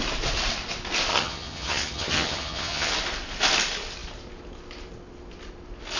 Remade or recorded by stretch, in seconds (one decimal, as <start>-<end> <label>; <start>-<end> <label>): 0.0-1.1 recorded; 1.1-2.9 remade; 2.9-6.0 recorded